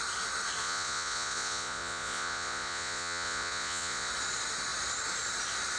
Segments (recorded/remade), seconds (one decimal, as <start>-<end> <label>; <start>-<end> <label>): 0.0-0.6 recorded; 0.6-4.1 remade; 4.1-5.8 recorded